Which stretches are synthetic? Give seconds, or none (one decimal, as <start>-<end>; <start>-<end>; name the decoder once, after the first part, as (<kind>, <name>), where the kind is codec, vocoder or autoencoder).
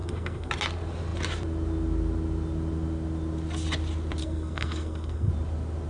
0.0-0.5 (codec, SNAC); 4.2-5.3